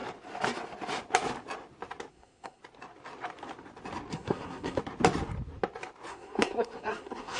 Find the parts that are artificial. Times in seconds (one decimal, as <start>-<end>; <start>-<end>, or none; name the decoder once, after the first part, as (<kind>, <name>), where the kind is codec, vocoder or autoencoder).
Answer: 2.1-2.6 (codec, SNAC); 4.1-4.8; 6.1-7.4